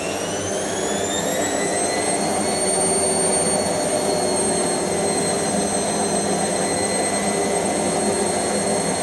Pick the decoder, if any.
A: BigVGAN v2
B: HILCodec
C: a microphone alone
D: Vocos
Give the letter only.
C